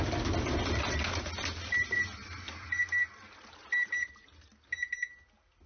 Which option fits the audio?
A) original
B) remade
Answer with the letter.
A